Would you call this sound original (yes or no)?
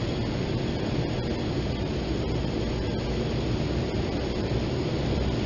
yes